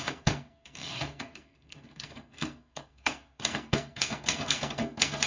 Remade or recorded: remade